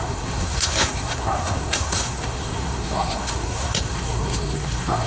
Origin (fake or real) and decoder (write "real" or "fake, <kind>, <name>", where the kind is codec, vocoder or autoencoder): fake, codec, SNAC